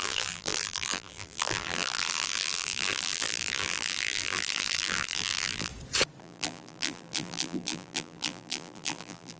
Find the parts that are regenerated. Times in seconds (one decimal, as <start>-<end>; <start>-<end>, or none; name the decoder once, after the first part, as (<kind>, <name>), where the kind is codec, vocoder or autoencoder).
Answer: 0.0-5.7 (vocoder, BigVGAN v2); 6.2-9.4